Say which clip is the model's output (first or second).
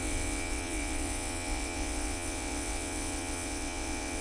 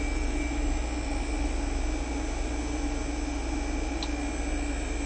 first